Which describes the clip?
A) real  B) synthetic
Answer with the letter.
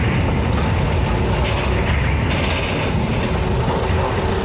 A